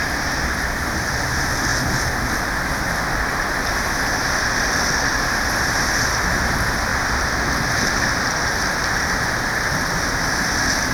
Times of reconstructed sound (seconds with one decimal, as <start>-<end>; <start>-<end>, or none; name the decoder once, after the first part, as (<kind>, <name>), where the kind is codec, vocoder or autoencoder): none